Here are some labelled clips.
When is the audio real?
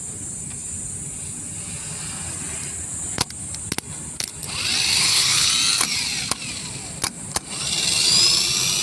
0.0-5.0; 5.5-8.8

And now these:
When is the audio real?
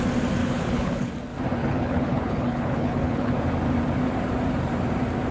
0.0-0.4; 1.1-1.6; 3.3-5.3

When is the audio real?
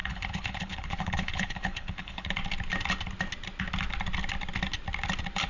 2.3-5.5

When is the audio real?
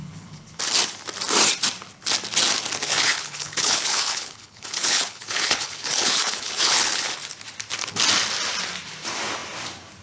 0.6-2.9; 7.1-10.0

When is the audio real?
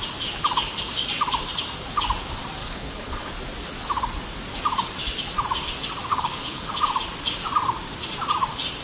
0.0-2.6; 3.3-6.1; 6.7-8.8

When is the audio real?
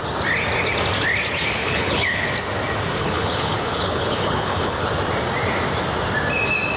0.0-1.6; 2.3-3.0; 4.9-6.8